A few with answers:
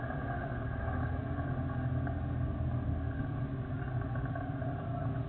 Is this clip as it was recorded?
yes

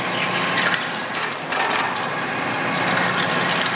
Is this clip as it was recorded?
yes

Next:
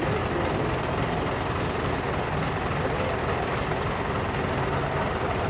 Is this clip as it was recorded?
yes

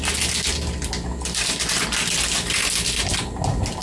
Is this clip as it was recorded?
yes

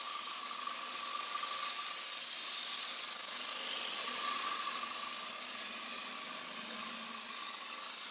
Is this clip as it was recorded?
yes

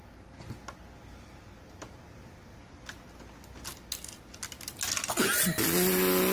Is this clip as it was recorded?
yes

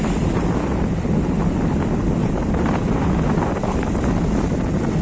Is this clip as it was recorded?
yes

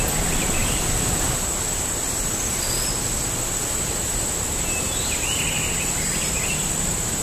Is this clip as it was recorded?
yes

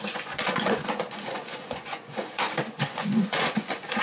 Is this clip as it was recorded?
no